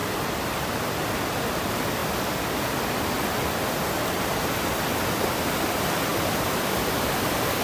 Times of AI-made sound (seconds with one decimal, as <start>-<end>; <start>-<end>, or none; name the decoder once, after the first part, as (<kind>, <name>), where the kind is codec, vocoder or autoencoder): 6.1-7.6 (vocoder, BigVGAN v2)